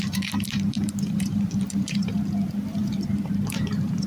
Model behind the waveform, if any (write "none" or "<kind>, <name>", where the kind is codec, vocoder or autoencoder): vocoder, BigVGAN v2